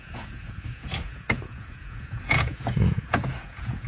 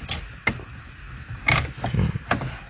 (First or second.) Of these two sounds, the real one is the second